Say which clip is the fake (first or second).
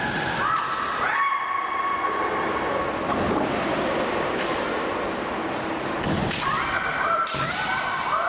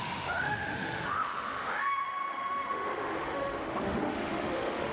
second